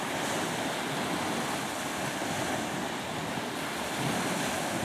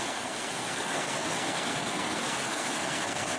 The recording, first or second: first